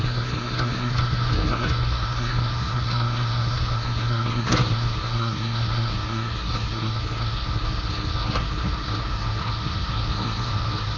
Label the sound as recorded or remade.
remade